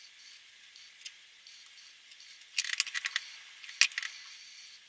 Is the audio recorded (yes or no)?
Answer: yes